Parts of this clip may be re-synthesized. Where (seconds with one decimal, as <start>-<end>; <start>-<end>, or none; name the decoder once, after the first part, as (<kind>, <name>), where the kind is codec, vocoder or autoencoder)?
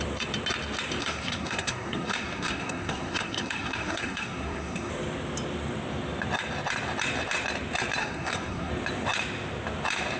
1.0-4.9 (codec, SNAC); 8.0-8.7